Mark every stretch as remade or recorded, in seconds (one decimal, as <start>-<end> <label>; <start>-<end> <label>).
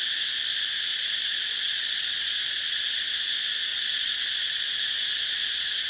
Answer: 0.0-0.9 recorded; 0.9-3.0 remade; 3.0-3.7 recorded; 3.7-4.7 remade; 4.7-5.9 recorded